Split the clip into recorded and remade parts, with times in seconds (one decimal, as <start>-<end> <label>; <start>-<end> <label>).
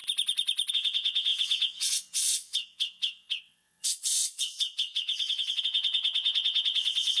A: 0.0-0.7 recorded; 0.7-7.2 remade